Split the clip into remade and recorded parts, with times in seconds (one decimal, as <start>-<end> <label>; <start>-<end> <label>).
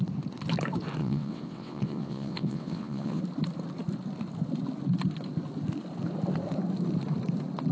0.0-1.0 recorded; 1.0-3.2 remade; 3.2-7.7 recorded